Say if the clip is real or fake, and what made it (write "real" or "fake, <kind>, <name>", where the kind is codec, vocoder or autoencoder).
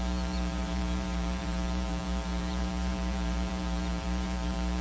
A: fake, vocoder, BigVGAN v2